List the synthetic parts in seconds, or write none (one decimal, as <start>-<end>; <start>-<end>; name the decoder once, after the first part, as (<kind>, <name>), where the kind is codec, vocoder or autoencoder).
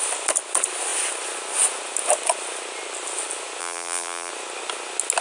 3.6-4.3 (vocoder, BigVGAN v2)